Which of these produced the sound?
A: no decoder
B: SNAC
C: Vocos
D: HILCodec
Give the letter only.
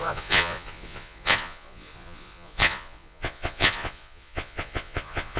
C